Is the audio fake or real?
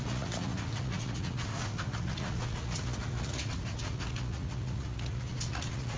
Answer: fake